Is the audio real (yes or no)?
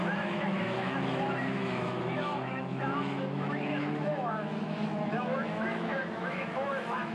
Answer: no